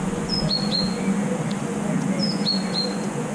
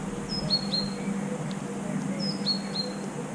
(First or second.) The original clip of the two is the second